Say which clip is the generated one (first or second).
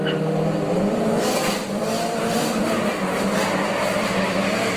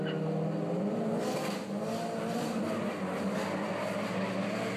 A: first